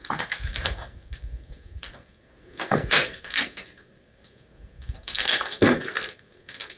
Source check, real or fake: fake